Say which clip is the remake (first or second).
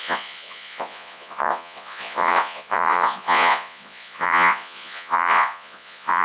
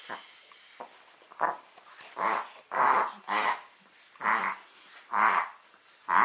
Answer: first